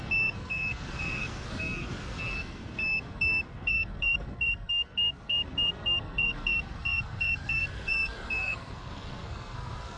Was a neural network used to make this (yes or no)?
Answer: yes